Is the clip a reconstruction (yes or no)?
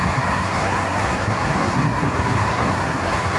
yes